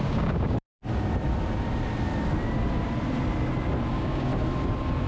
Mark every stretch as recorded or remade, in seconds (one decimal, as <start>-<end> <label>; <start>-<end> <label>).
0.0-0.8 remade; 0.8-3.9 recorded; 3.9-4.3 remade; 4.3-5.1 recorded